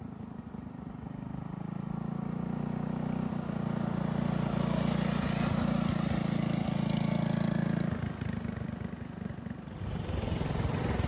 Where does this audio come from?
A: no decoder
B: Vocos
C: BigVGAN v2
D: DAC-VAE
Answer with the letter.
A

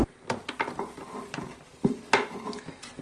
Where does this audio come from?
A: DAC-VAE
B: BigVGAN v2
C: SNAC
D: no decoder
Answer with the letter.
D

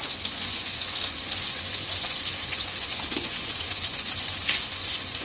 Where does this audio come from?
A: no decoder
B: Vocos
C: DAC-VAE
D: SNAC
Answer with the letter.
B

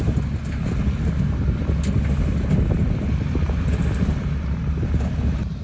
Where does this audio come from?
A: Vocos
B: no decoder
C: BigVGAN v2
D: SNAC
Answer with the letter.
B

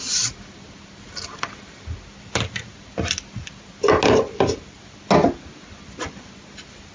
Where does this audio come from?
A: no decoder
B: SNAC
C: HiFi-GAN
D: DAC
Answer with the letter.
A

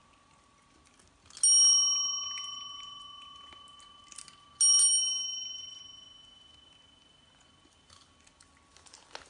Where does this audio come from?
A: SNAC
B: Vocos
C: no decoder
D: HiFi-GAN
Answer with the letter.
C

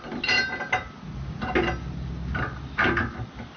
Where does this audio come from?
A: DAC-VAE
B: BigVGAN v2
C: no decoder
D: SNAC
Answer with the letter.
C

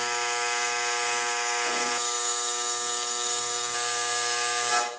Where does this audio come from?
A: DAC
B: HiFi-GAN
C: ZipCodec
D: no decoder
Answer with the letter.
A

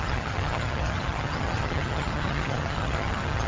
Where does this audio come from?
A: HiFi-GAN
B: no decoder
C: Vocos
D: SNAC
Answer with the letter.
A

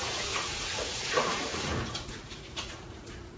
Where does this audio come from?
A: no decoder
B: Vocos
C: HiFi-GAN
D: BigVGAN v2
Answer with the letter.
B